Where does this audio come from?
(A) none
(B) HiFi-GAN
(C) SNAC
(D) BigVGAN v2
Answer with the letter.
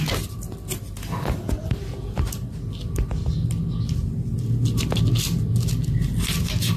A